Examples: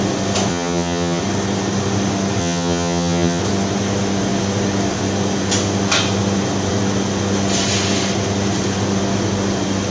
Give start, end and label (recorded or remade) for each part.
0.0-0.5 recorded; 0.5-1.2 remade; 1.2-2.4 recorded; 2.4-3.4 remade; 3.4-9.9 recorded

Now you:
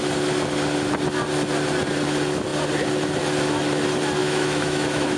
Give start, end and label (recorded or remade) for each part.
0.0-4.2 recorded; 4.2-5.2 remade

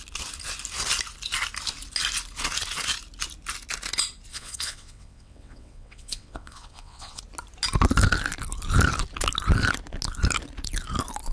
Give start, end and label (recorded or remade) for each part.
0.0-4.3 recorded; 4.3-7.2 remade; 7.2-11.3 recorded

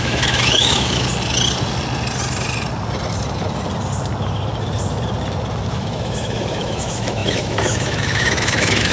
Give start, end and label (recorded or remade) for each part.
0.0-1.1 remade; 1.1-5.7 recorded; 5.7-8.9 remade

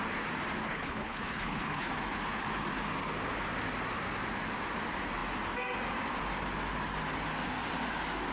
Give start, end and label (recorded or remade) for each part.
0.0-0.6 recorded; 0.6-1.9 remade; 1.9-8.3 recorded